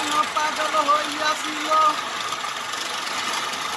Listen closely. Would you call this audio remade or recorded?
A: recorded